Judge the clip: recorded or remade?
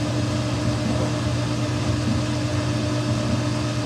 recorded